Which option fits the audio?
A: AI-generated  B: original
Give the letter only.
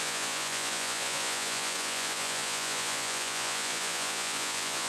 A